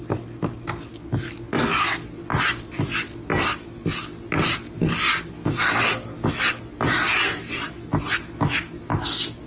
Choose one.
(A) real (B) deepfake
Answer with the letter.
A